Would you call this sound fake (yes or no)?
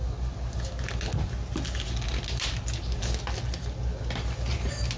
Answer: no